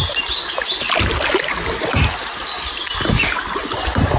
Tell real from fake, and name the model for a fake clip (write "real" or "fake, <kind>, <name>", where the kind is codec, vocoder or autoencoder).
real